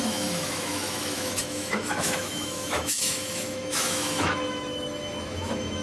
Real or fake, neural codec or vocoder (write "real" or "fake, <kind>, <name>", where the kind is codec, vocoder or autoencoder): fake, autoencoder, DAC-VAE